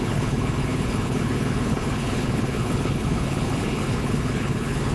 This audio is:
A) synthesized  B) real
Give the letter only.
A